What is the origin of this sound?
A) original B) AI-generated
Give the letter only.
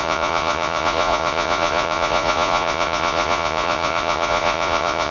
B